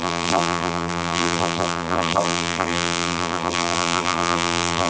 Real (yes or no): no